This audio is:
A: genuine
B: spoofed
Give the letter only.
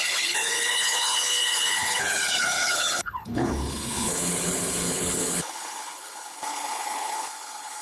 B